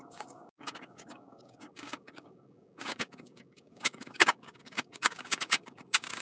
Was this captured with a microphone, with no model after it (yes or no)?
no